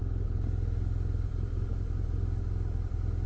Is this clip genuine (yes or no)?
yes